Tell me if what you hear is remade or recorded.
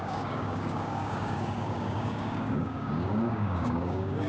remade